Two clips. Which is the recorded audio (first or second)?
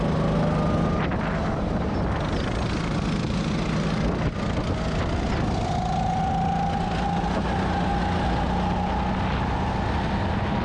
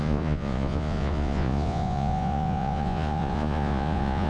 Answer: first